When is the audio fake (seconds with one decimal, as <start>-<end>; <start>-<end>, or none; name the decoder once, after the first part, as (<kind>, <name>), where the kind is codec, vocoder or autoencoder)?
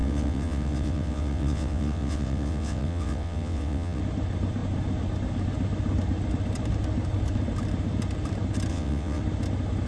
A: 0.0-4.0 (vocoder, WaveNeXt); 8.7-9.2